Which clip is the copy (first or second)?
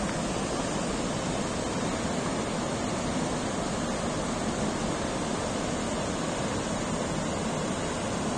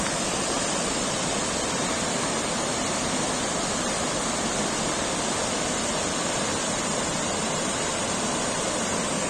second